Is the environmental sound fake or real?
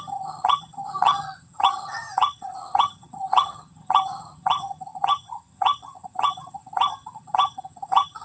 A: fake